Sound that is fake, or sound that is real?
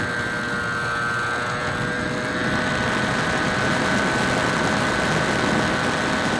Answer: real